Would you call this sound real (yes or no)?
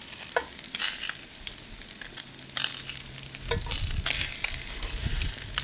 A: yes